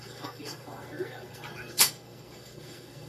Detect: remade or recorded remade